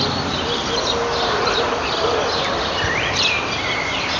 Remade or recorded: remade